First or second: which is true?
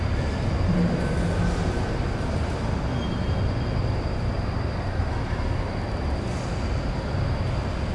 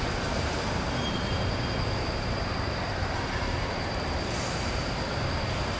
first